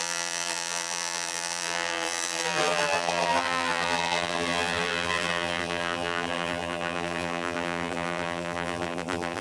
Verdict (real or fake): fake